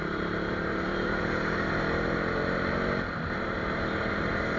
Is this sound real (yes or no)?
no